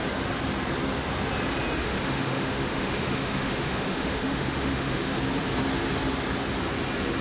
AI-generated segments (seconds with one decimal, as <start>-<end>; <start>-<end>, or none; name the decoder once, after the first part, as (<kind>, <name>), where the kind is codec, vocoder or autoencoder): 1.8-5.2 (autoencoder, DAC-VAE)